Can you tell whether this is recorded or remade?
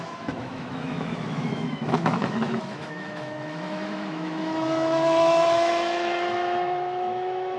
remade